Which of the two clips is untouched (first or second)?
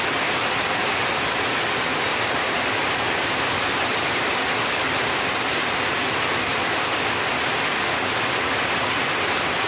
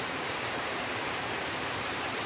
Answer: first